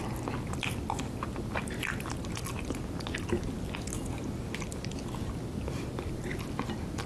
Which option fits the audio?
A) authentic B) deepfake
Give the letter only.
A